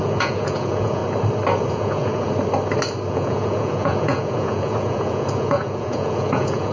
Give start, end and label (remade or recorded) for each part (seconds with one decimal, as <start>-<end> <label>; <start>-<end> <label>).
0.0-1.0 remade; 1.0-1.7 recorded; 1.7-2.3 remade; 2.3-3.1 recorded; 3.1-6.7 remade